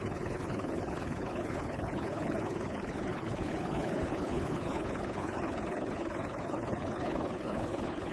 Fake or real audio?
fake